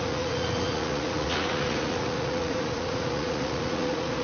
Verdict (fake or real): fake